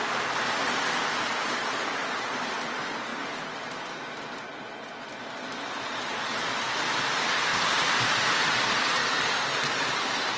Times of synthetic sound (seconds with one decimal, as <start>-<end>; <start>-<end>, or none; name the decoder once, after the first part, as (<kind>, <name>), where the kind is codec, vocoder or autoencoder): 7.5-8.4 (vocoder, BigVGAN v2); 9.0-10.4